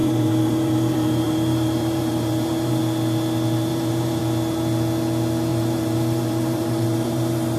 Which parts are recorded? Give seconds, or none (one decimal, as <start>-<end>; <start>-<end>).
2.8-3.7; 4.2-5.5